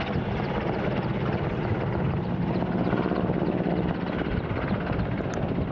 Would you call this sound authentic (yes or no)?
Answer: yes